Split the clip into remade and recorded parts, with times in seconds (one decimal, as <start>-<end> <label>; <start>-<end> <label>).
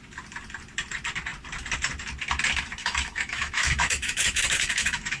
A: 0.0-2.8 recorded; 2.8-5.2 remade